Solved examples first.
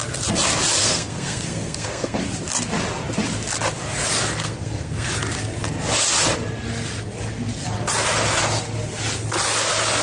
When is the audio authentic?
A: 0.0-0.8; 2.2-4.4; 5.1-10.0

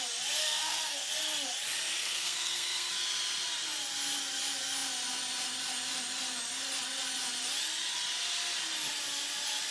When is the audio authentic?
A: 0.0-0.4; 1.1-2.0; 2.9-9.7

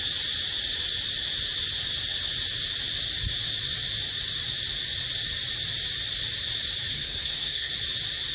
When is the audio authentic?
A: 0.0-6.9; 7.7-8.3

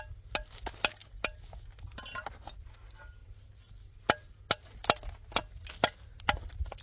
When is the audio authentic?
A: 0.0-6.8

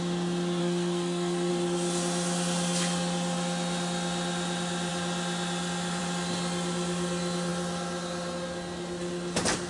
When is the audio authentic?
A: 0.0-0.6; 1.5-9.7

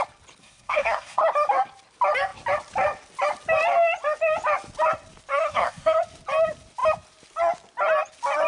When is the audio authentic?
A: 0.0-0.4; 1.2-5.3; 6.0-8.5

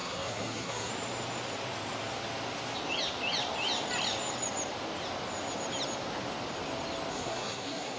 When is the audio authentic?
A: 0.9-7.1

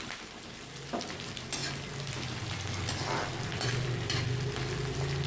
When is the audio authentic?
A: 0.0-5.3